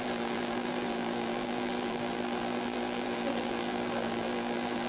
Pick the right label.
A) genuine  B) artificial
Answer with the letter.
B